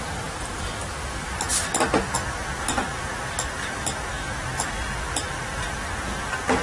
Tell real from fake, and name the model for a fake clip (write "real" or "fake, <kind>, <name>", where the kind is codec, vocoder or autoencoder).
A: real